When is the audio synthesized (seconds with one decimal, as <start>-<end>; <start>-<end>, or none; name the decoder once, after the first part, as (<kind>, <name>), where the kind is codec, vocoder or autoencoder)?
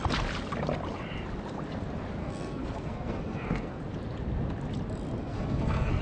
2.2-3.8 (codec, SNAC); 5.2-6.0